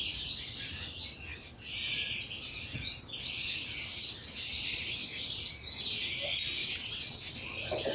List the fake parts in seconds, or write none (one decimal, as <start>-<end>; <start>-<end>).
6.6-7.3